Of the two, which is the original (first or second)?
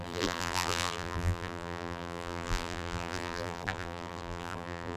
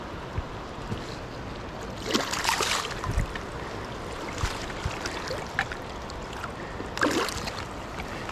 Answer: second